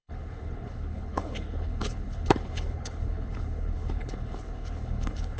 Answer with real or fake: fake